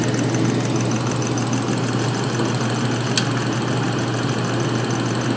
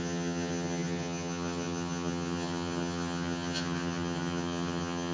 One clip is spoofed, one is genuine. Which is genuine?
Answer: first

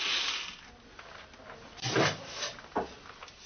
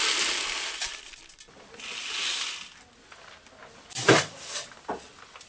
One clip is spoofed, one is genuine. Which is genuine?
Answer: first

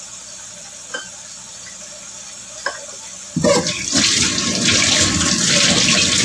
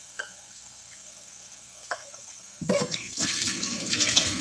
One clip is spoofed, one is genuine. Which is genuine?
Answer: first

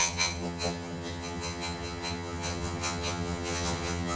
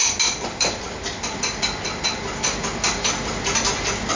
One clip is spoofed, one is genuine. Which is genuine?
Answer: second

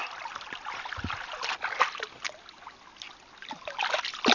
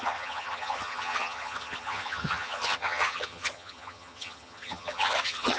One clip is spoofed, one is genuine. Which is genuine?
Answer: first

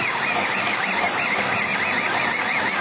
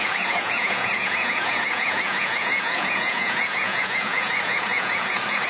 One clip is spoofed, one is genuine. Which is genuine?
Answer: first